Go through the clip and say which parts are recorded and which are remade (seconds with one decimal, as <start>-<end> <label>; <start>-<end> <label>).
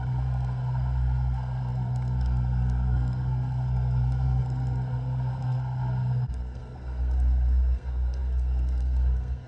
0.0-9.5 remade